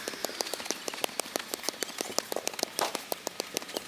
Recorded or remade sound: recorded